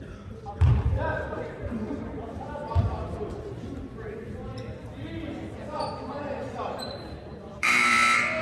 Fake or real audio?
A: fake